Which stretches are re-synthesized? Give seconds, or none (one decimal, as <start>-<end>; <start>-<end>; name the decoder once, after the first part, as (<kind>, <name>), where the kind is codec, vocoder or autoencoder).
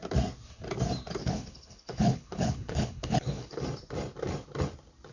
1.2-3.6 (codec, HILCodec)